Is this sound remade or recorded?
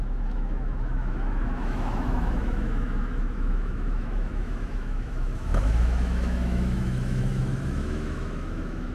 remade